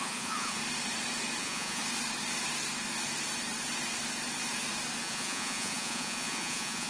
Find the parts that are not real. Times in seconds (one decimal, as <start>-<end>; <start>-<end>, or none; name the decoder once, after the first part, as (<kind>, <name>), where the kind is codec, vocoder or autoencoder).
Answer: 0.0-0.6 (vocoder, Vocos); 1.4-1.8; 5.0-6.9